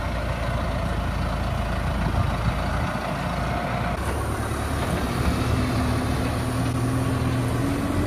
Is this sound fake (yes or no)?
no